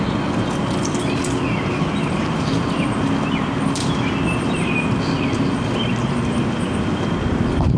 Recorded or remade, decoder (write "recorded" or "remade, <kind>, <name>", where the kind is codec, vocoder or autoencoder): recorded